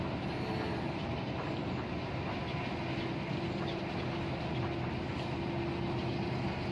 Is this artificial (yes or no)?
no